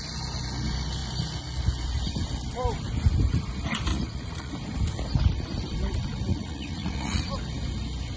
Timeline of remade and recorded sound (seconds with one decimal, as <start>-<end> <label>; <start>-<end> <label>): 0.0-3.9 recorded; 3.9-4.5 remade; 4.5-6.3 recorded; 6.3-7.3 remade; 7.3-8.2 recorded